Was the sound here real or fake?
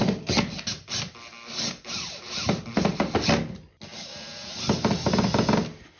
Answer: real